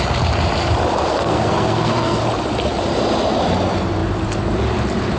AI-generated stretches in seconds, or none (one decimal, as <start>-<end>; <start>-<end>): 1.1-2.2

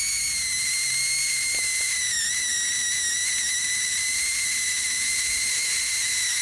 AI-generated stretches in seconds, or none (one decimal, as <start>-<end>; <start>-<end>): none

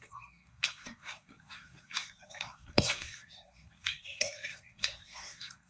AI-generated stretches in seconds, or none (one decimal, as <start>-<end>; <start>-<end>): 0.0-5.7

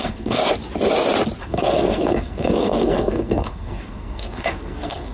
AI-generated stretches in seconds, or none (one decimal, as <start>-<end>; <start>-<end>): 0.0-0.4; 1.4-5.1

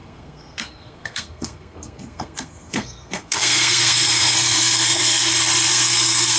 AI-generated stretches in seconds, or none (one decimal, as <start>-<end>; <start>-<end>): 0.0-5.2; 5.7-6.4

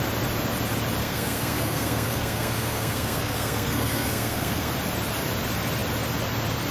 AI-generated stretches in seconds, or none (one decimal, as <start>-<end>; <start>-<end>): 1.0-4.7

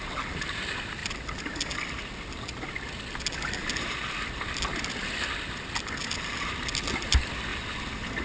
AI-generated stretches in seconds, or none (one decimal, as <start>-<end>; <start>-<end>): none

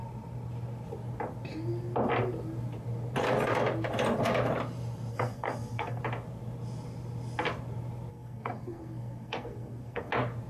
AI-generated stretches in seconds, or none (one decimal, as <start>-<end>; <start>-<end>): 5.1-6.0; 8.1-10.1